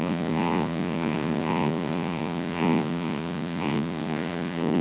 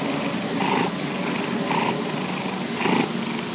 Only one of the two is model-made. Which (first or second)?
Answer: first